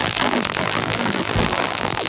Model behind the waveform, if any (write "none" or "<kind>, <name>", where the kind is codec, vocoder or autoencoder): vocoder, BigVGAN v2